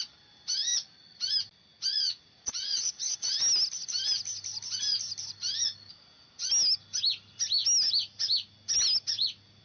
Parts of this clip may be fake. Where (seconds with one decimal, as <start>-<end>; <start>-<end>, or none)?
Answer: 1.9-3.1